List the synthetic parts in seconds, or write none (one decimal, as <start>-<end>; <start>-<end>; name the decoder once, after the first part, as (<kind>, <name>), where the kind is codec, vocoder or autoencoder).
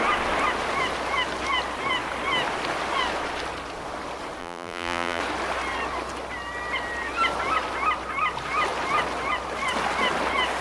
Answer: 4.4-5.2 (vocoder, BigVGAN v2)